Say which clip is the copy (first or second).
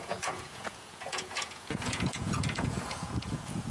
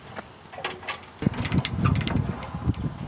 first